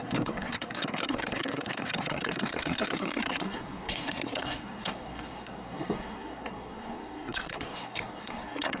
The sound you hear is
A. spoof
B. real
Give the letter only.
A